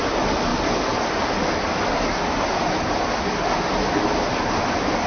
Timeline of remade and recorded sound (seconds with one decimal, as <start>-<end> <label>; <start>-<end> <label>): 0.0-5.1 recorded